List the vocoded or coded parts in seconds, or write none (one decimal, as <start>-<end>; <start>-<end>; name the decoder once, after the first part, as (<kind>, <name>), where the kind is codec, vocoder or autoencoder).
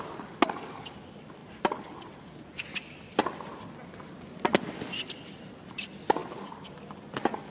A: 6.2-7.5 (vocoder, BigVGAN v2)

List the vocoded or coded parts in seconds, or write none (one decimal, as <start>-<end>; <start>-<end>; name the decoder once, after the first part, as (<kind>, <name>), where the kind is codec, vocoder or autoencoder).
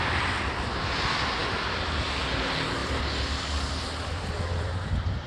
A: 2.8-4.7 (vocoder, BigVGAN v2)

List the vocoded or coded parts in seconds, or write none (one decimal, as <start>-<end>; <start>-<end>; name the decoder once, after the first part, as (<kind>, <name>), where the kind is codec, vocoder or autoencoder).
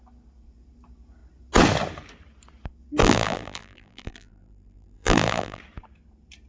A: 3.0-5.6 (vocoder, BigVGAN v2)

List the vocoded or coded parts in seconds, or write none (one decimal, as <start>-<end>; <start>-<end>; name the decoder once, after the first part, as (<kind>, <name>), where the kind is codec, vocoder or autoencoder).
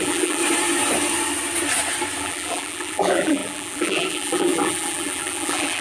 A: 0.0-0.4 (vocoder, BigVGAN v2); 2.2-5.8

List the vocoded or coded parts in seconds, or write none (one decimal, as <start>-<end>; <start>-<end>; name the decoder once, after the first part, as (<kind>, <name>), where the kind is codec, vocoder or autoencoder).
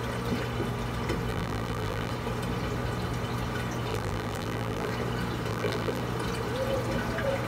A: 1.3-2.1 (vocoder, BigVGAN v2); 3.9-4.9; 5.5-6.0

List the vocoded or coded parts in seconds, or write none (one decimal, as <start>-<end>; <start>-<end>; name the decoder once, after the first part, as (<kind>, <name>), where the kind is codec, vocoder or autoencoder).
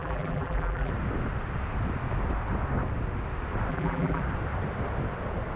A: 0.0-0.9 (vocoder, BigVGAN v2); 3.7-4.2